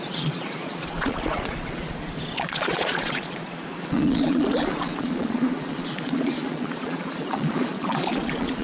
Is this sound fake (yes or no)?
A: yes